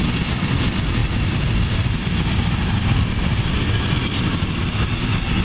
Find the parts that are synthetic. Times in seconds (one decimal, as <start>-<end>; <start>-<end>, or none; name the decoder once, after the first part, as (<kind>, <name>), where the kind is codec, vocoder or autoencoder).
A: none